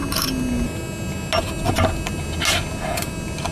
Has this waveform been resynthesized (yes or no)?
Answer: no